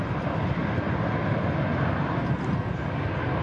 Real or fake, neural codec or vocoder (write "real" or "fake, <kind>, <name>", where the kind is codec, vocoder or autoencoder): real